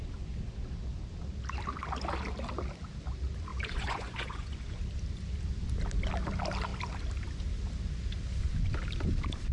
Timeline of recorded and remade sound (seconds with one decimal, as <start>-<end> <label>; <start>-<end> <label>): 0.0-3.5 recorded; 3.5-4.8 remade; 4.8-9.5 recorded